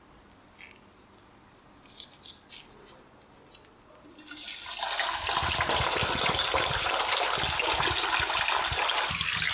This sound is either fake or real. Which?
real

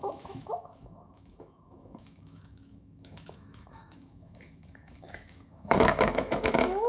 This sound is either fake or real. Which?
fake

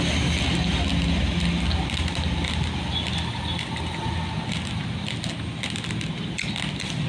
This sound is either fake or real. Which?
real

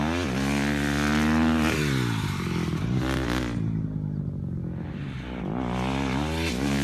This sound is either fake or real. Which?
real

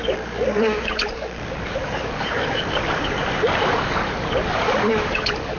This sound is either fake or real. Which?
fake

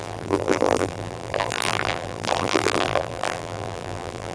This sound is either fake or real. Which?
fake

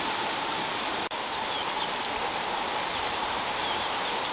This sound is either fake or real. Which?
fake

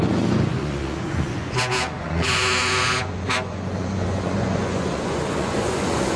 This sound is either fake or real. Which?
fake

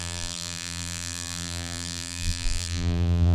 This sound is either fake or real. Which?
fake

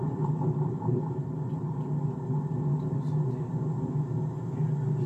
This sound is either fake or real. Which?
real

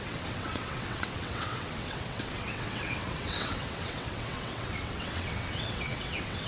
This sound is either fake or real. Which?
fake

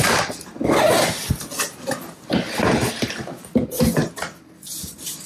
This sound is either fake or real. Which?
real